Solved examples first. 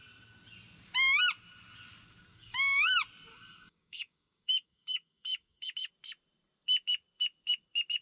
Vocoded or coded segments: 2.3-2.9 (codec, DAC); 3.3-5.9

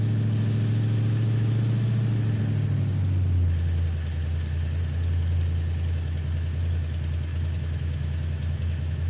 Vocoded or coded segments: 7.3-9.1 (autoencoder, DAC-VAE)